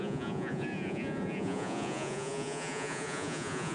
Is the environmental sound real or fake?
fake